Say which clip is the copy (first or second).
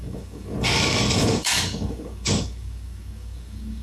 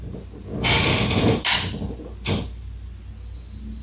first